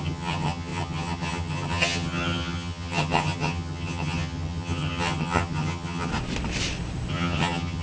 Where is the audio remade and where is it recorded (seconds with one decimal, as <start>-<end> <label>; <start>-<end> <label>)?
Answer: 0.0-6.1 remade; 6.1-7.1 recorded; 7.1-7.8 remade

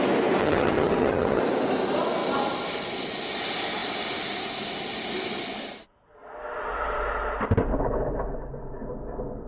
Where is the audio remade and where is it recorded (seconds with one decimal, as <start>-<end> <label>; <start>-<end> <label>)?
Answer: 0.0-0.4 recorded; 0.4-1.4 remade; 1.4-9.5 recorded

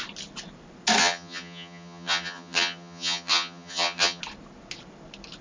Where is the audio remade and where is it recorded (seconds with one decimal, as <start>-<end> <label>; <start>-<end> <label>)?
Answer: 0.0-1.0 recorded; 1.0-4.2 remade; 4.2-5.4 recorded

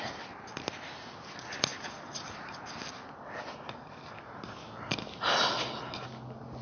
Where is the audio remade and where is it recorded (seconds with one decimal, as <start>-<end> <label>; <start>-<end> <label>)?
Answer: 0.0-6.6 recorded